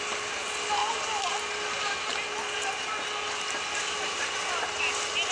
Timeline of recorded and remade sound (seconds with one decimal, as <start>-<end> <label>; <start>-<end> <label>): 0.0-5.3 recorded